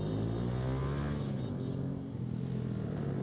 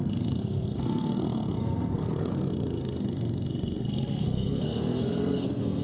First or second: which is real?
first